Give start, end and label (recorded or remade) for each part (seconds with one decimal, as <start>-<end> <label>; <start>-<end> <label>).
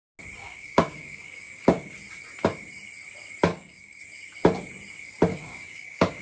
0.0-0.4 recorded; 0.4-1.9 remade; 1.9-3.5 recorded; 3.5-4.0 remade; 4.0-5.3 recorded; 5.3-6.2 remade